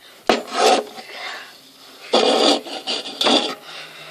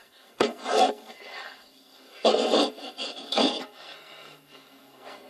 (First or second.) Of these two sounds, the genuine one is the first